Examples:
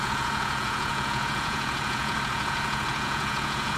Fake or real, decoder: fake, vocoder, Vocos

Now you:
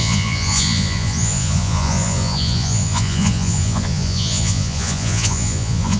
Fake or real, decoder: fake, vocoder, Vocos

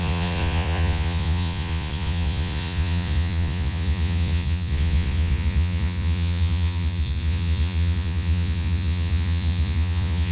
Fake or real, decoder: fake, vocoder, Vocos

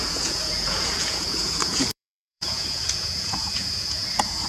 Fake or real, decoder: fake, vocoder, Vocos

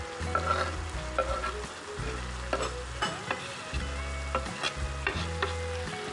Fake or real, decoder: real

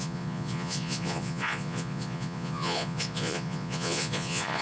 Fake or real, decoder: fake, vocoder, Vocos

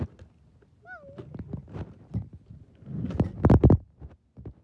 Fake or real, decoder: real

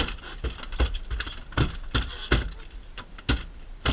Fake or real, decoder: real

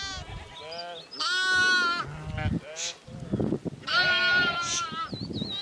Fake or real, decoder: real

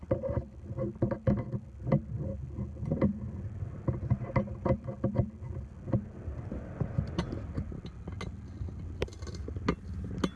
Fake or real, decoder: real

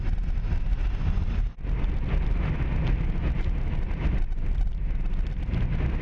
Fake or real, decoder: real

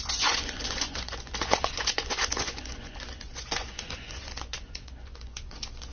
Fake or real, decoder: fake, vocoder, Vocos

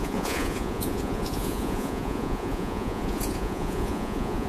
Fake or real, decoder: fake, vocoder, Vocos